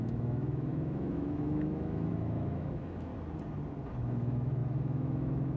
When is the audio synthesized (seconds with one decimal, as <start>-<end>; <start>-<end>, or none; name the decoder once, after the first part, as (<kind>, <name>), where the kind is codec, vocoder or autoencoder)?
0.0-3.1 (autoencoder, DAC-VAE); 4.0-5.6